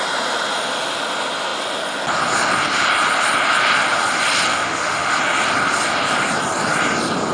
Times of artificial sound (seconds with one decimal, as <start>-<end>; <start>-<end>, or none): 4.5-5.1